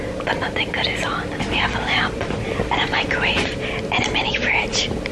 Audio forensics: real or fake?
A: real